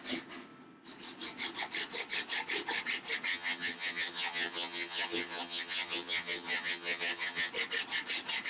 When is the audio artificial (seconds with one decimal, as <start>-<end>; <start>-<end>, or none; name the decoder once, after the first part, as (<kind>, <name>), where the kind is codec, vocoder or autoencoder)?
3.3-7.5 (vocoder, HiFi-GAN)